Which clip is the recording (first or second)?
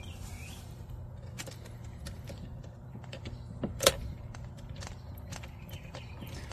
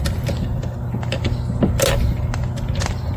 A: second